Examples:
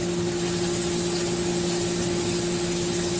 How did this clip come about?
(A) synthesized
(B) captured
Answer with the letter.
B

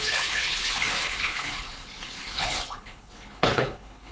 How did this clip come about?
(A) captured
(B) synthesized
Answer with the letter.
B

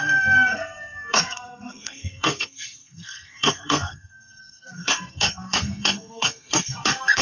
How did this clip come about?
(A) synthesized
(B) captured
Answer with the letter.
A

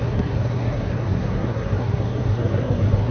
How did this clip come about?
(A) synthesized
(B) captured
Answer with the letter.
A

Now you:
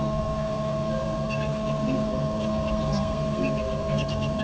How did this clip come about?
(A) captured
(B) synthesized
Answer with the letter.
B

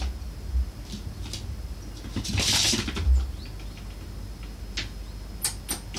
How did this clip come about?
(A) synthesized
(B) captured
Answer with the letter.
B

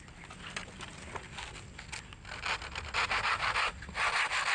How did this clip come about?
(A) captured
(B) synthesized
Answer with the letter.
A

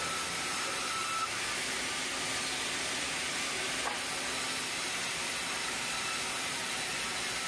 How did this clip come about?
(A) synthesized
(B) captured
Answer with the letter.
B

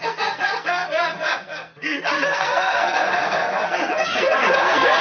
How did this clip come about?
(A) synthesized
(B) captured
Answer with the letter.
A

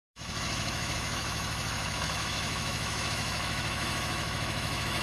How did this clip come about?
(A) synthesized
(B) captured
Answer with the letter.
A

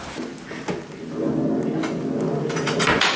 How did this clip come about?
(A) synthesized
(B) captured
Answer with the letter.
B